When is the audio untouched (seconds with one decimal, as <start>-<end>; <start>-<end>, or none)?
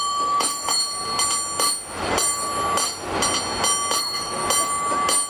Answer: 0.8-4.0; 4.4-5.3